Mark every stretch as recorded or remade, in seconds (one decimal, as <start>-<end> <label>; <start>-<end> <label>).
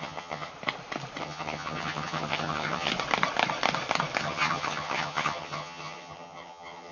0.0-0.5 remade; 0.5-1.2 recorded; 1.2-2.9 remade; 2.9-4.2 recorded; 4.2-6.9 remade